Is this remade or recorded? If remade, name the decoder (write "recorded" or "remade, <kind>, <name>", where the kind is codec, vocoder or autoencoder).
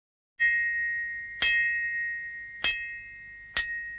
recorded